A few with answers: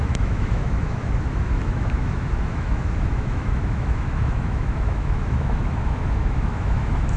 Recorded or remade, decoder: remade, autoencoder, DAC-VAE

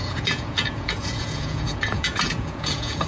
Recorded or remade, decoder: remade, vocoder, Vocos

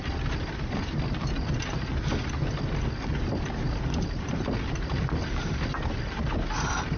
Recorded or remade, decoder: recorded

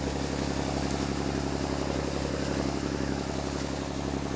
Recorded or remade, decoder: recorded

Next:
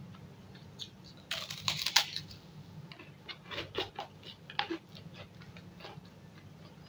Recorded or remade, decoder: recorded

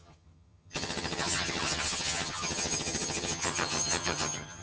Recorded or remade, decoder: remade, vocoder, HiFi-GAN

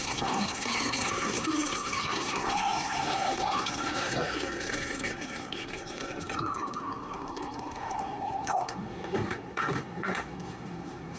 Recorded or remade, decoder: remade, codec, SNAC